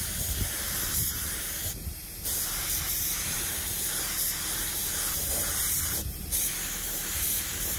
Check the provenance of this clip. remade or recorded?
remade